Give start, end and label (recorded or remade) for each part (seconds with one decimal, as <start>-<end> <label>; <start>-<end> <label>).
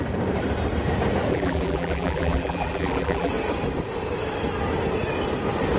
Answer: 0.0-1.3 recorded; 1.3-3.3 remade; 3.3-5.8 recorded